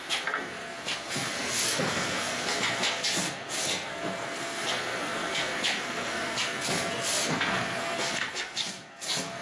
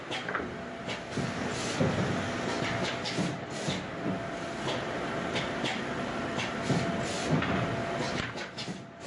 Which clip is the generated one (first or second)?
first